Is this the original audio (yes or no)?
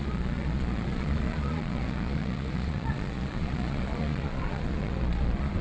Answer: no